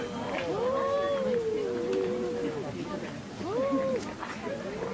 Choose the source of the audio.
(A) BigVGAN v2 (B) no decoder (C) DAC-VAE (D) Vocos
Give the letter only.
B